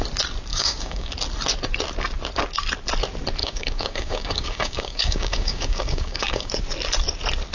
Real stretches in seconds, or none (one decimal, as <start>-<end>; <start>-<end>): 0.0-0.5; 1.1-3.4; 6.5-7.5